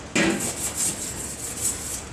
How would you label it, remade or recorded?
recorded